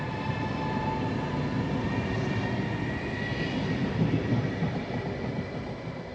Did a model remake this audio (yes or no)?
no